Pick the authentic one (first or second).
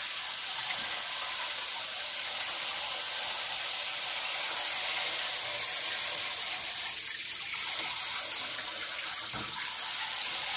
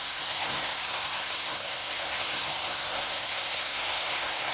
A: first